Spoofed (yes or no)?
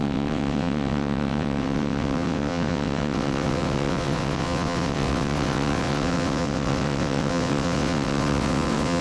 yes